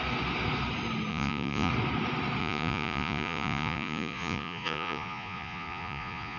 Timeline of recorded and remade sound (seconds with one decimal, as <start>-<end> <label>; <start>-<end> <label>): 0.0-1.1 recorded; 1.1-1.7 remade; 1.7-2.4 recorded; 2.4-6.4 remade